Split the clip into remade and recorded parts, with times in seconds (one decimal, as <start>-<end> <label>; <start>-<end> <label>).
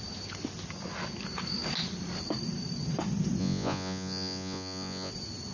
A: 0.0-3.4 recorded; 3.4-5.1 remade; 5.1-5.5 recorded